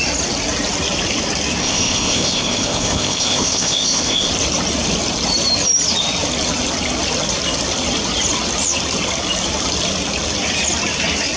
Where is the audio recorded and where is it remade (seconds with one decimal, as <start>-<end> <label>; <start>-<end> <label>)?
0.0-1.6 recorded; 1.6-4.3 remade; 4.3-11.4 recorded